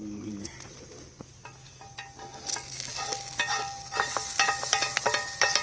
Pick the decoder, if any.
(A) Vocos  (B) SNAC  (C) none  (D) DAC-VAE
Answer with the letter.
C